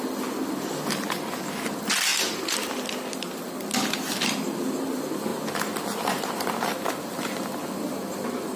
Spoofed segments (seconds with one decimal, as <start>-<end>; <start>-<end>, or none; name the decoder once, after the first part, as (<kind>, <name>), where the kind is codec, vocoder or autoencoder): none